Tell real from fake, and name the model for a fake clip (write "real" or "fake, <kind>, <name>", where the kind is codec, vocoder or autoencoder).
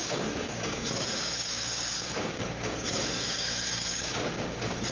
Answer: fake, codec, DAC